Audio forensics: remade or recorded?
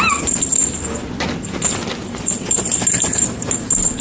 recorded